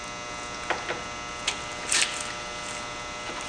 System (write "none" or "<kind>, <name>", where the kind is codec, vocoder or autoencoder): none